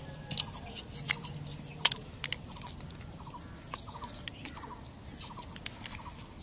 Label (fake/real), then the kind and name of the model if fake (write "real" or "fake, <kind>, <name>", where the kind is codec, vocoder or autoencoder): real